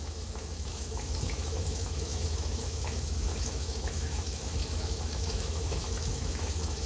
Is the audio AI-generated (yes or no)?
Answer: yes